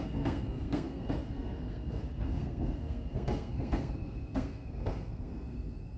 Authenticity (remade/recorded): remade